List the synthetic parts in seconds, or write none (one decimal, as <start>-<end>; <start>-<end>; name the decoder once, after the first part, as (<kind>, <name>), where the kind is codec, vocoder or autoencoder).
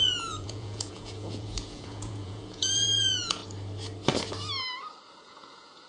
0.0-3.4 (vocoder, Vocos); 5.2-5.9